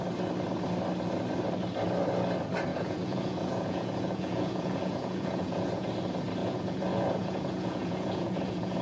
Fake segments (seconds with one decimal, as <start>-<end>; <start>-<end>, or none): 2.7-5.9; 6.4-8.8